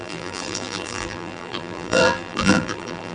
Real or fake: fake